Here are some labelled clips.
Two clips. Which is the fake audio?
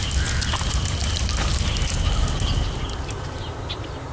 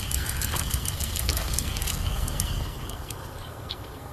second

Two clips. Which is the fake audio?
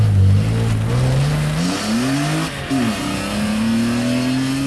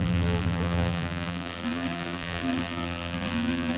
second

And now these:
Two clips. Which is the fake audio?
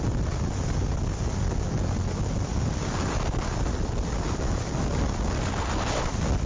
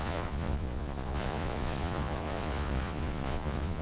second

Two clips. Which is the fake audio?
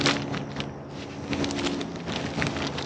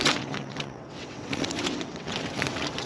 second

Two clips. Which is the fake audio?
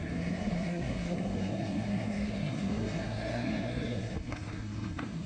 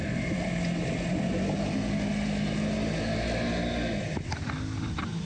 first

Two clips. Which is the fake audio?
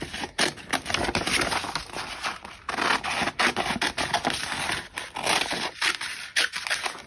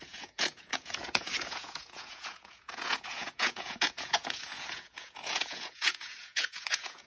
second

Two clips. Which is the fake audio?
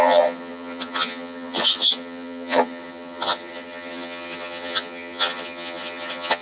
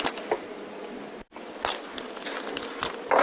first